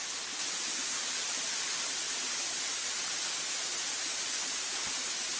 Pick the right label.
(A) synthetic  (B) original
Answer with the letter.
B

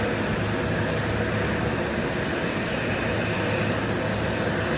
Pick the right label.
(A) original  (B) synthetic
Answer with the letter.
A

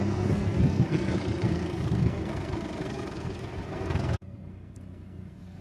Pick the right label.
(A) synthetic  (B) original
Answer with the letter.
A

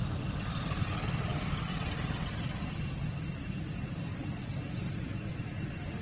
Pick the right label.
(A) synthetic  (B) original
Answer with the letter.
B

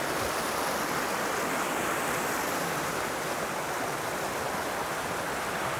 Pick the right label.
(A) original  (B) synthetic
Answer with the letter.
A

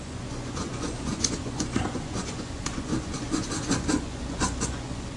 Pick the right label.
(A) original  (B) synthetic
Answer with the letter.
B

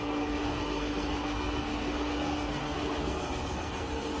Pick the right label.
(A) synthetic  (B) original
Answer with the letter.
A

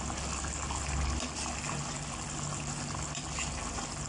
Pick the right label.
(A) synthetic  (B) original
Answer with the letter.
B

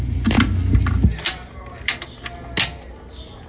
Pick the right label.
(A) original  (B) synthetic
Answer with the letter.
A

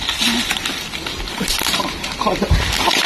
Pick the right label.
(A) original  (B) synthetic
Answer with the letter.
A